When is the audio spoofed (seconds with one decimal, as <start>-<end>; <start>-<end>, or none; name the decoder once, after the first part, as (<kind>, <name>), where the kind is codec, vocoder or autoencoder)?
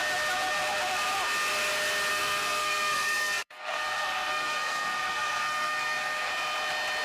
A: 2.1-6.3 (codec, SNAC)